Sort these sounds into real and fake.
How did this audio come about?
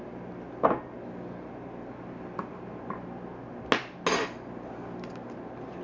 real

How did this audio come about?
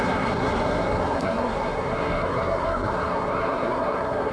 fake